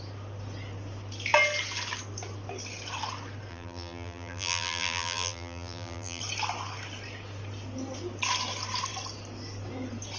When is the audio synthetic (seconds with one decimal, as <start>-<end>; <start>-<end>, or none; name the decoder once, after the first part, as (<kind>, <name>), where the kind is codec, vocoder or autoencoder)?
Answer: 3.5-6.2 (vocoder, BigVGAN v2)